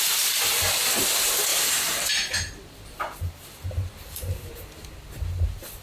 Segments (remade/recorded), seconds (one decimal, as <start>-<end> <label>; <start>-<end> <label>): 0.0-1.5 recorded; 1.5-5.0 remade; 5.0-5.8 recorded